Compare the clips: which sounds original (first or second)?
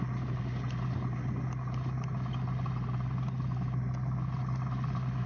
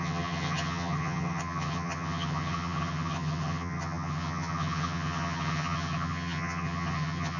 first